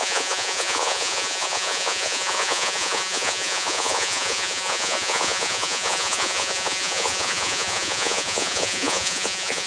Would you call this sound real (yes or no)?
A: no